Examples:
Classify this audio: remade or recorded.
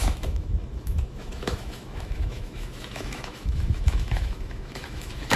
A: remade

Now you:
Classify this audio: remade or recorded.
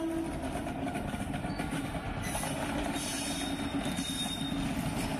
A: recorded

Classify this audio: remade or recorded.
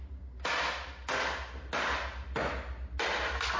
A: recorded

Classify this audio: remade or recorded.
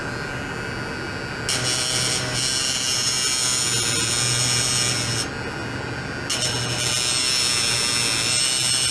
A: recorded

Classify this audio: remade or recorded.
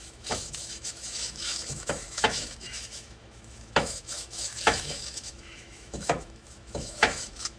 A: remade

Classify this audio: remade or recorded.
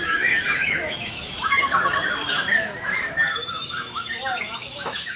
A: remade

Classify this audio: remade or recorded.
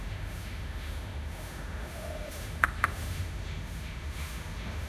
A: remade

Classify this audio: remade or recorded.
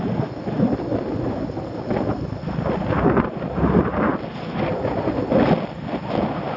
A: recorded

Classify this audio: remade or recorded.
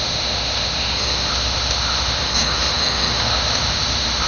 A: remade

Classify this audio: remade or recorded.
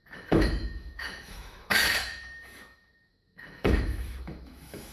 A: remade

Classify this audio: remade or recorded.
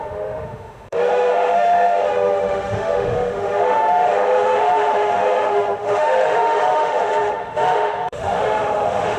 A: remade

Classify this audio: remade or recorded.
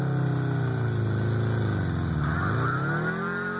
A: recorded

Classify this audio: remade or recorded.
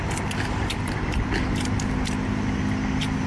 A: recorded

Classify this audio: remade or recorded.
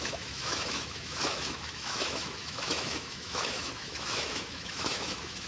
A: remade